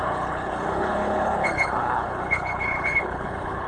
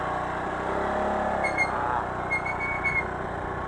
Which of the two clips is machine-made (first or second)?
first